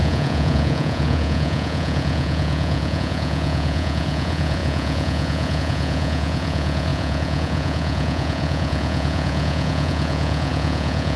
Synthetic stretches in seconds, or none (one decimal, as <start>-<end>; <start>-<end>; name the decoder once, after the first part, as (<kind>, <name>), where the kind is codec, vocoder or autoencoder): 0.0-11.2 (vocoder, Vocos)